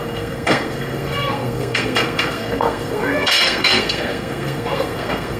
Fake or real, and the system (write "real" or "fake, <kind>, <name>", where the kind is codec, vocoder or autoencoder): fake, codec, SNAC